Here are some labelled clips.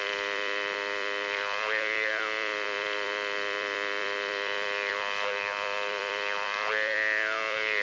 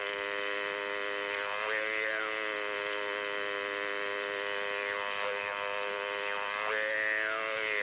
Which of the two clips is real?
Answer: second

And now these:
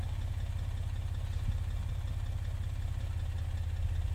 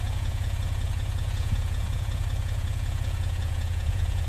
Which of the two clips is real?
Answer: first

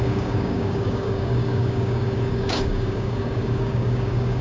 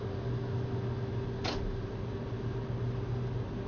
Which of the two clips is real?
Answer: second